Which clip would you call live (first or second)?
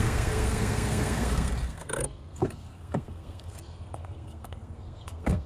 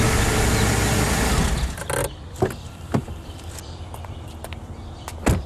second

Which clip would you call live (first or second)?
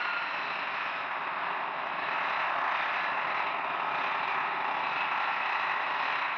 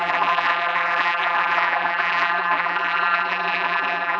first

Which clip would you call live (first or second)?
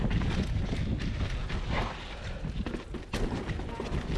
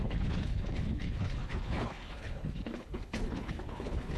first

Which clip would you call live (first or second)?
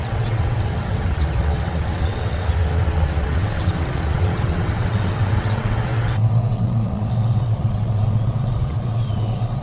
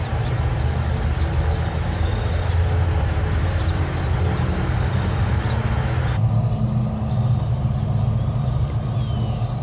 second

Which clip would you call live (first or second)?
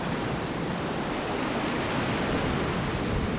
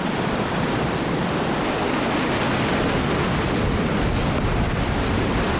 second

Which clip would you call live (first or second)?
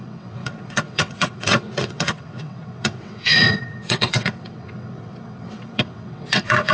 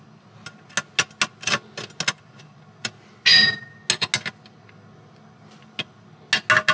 second